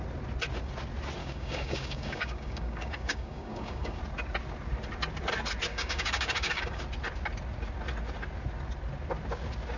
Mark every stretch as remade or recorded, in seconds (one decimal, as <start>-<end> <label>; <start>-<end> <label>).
0.0-1.2 recorded; 1.2-4.0 remade; 4.0-5.7 recorded; 5.7-6.8 remade; 6.8-9.8 recorded